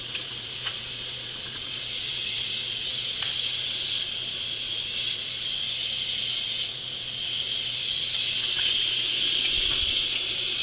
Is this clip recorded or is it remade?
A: remade